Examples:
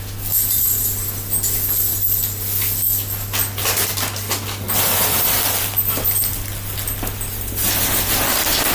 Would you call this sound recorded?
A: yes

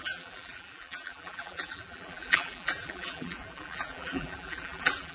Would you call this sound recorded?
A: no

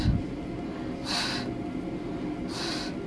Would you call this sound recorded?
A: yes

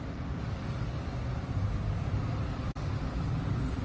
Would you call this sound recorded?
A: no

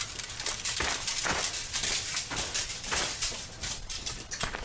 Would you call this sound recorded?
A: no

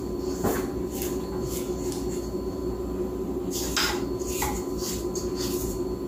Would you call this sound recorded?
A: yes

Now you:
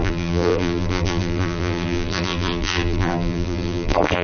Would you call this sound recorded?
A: no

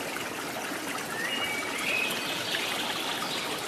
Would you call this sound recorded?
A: yes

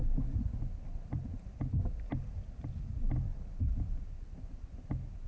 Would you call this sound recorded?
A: no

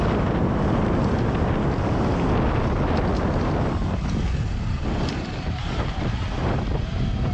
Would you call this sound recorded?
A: yes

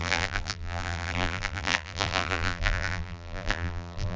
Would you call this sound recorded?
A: no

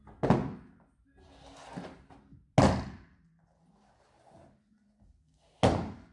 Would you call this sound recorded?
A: yes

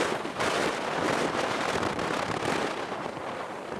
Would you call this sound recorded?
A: no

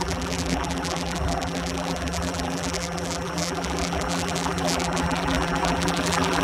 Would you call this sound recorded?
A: no